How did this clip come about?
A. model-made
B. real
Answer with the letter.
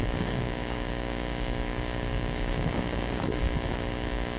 A